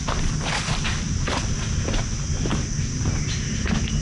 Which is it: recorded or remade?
recorded